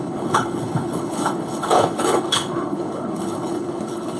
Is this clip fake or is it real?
fake